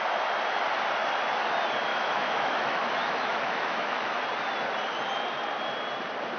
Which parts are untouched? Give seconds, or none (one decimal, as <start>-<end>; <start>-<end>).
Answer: 0.0-1.9; 4.2-6.4